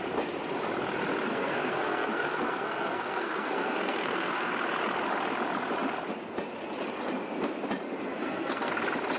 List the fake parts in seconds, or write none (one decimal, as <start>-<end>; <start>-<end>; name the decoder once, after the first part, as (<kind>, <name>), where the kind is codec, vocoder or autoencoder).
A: 1.3-4.5 (codec, SNAC); 8.1-8.7